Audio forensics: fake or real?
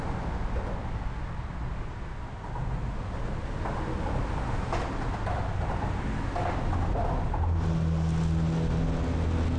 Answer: real